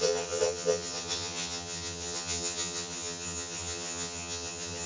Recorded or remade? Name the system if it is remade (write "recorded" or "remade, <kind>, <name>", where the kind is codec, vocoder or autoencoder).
remade, vocoder, HiFi-GAN